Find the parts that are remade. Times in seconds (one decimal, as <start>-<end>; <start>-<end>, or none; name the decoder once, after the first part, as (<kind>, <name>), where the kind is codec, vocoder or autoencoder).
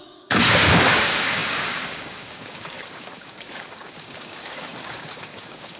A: 0.0-5.8 (codec, DAC)